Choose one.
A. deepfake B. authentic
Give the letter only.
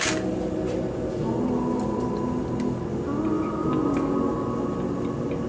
B